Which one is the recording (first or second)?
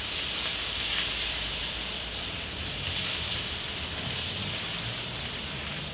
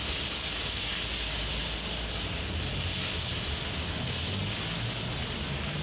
second